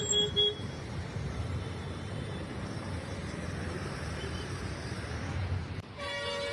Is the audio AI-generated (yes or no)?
yes